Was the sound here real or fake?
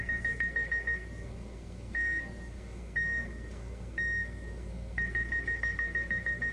fake